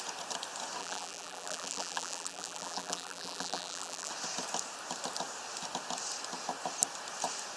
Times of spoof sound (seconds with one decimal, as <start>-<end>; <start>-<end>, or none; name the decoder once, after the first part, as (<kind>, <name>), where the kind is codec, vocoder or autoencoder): 0.8-4.1 (vocoder, BigVGAN v2)